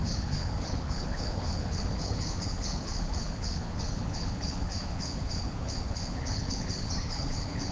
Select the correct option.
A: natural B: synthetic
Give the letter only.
B